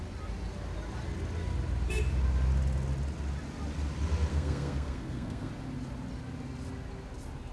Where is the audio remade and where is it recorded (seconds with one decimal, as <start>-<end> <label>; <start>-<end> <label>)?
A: 0.0-4.3 recorded; 4.3-5.5 remade; 5.5-7.5 recorded